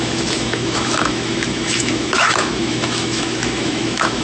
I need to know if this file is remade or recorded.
remade